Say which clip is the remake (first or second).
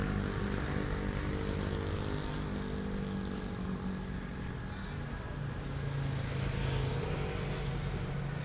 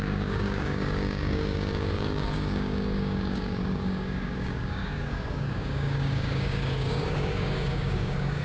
second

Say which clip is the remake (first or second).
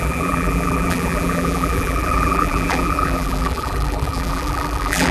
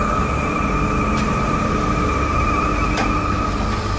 first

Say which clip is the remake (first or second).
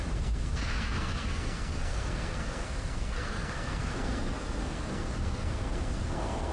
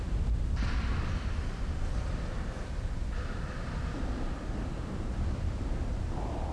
first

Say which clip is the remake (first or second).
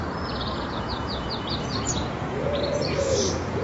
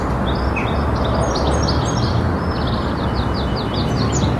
first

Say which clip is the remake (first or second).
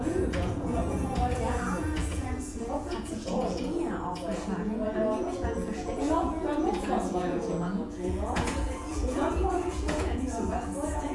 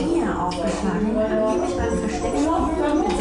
first